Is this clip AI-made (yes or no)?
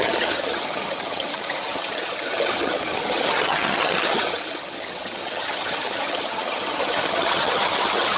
yes